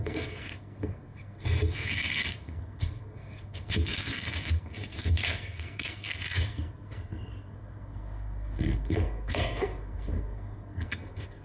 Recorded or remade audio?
remade